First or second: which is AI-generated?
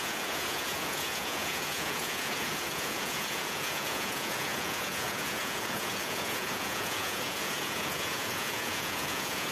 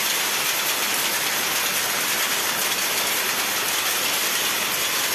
first